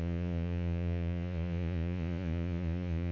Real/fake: fake